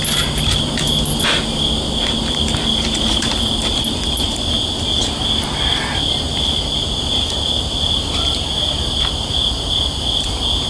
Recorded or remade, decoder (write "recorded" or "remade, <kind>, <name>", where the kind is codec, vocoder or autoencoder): recorded